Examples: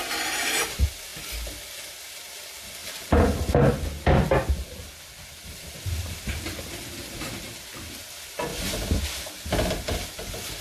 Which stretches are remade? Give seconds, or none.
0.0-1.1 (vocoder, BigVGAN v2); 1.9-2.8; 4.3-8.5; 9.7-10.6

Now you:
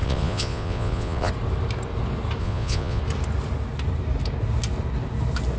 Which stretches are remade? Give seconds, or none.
0.0-1.3 (vocoder, Vocos); 2.4-3.0

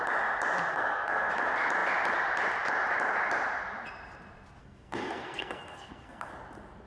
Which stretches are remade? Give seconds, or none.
0.7-1.3 (codec, SNAC); 4.6-6.3

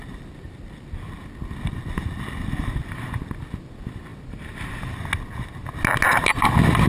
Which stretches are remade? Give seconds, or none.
none

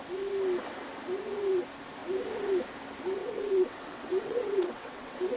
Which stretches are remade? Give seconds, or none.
3.2-5.4 (vocoder, WaveNeXt)

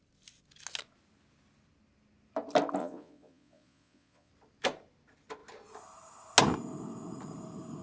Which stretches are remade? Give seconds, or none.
2.8-4.3 (vocoder, Vocos)